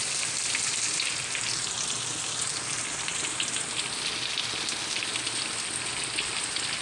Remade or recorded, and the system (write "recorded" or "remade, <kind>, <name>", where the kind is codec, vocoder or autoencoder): recorded